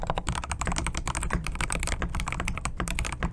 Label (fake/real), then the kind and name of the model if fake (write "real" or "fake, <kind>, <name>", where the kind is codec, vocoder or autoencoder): fake, vocoder, BigVGAN v2